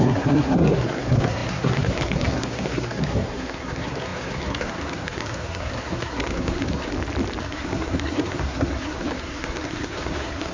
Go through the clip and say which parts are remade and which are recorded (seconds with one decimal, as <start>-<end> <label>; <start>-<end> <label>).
0.0-6.9 remade; 6.9-7.4 recorded; 7.4-10.5 remade